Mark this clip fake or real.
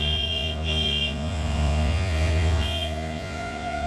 fake